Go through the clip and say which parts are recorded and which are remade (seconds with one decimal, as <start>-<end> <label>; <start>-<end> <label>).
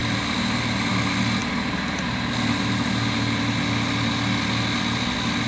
0.0-5.5 recorded